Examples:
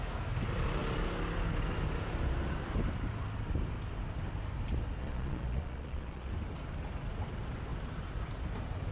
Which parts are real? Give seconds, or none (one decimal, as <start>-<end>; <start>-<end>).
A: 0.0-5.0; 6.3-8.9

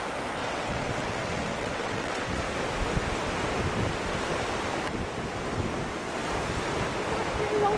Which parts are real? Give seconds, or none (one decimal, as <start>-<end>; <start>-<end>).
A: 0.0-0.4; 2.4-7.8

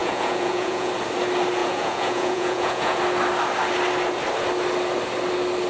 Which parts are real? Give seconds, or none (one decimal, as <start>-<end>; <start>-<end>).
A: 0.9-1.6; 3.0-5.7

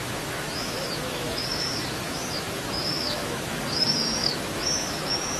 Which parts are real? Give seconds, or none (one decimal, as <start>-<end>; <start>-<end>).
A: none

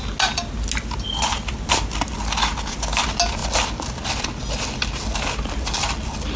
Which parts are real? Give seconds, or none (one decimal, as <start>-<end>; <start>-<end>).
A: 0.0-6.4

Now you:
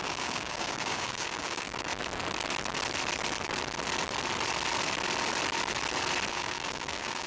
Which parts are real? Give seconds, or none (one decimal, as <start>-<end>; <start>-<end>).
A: 1.9-6.3